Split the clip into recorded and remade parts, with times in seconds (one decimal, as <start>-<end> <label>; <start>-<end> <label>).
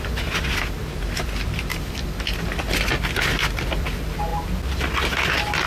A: 0.0-0.8 recorded; 0.8-1.7 remade; 1.7-5.7 recorded